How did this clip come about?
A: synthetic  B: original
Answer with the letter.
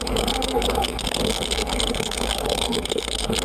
A